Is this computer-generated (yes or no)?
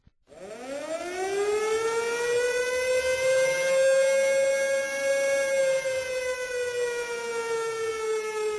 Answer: no